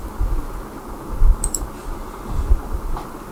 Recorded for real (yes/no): yes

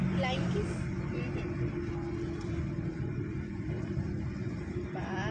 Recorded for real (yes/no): no